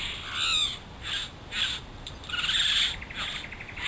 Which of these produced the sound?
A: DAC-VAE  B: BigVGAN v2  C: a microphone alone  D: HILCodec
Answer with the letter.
C